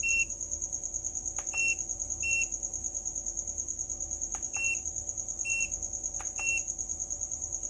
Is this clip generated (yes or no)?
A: no